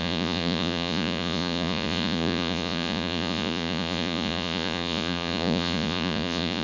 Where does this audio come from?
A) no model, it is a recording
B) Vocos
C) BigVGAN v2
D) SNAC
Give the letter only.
B